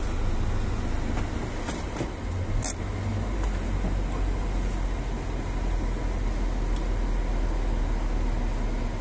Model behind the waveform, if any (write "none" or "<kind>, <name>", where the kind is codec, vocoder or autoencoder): none